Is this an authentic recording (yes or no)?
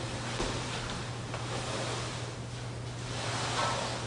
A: yes